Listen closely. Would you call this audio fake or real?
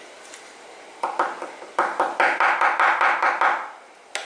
real